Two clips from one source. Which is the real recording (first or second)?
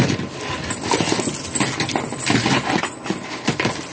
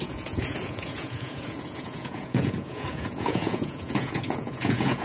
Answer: first